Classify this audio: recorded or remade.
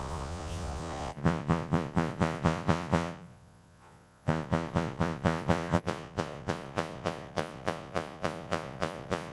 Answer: remade